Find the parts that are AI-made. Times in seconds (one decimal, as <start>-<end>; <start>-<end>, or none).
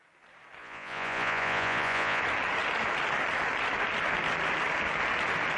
0.6-2.2